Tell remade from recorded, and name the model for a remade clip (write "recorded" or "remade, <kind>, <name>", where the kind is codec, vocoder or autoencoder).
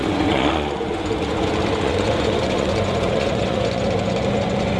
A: remade, vocoder, Vocos